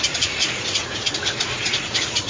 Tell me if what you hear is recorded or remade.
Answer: remade